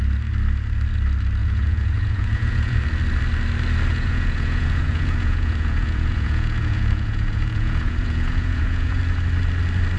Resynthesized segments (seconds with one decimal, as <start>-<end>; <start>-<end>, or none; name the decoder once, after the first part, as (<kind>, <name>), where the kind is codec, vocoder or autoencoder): 1.4-2.8 (vocoder, Vocos); 3.9-9.0